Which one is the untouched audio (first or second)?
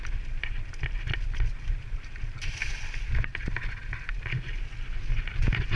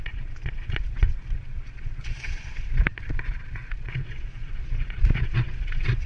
first